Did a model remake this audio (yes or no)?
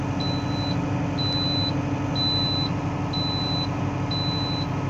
no